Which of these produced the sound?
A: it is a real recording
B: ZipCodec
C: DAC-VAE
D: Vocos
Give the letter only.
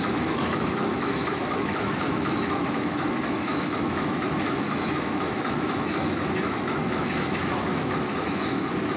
C